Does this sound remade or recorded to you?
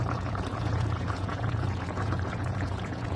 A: remade